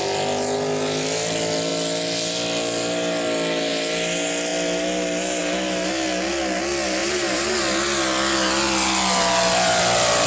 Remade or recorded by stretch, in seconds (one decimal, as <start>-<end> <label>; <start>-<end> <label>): 0.0-7.0 recorded; 7.0-7.6 remade; 7.6-10.3 recorded